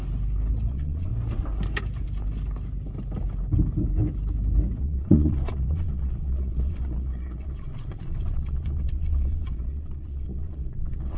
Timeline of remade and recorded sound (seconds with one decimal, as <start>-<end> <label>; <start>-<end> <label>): 0.0-0.7 recorded; 0.7-1.1 remade; 1.1-4.8 recorded; 4.8-11.2 remade